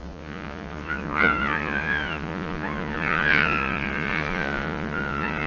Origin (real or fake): fake